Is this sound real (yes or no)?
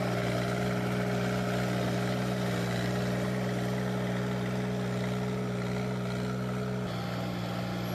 yes